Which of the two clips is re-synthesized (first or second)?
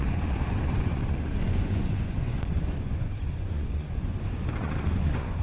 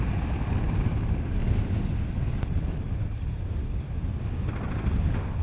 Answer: first